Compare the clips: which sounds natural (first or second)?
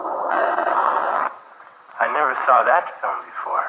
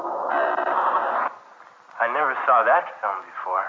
second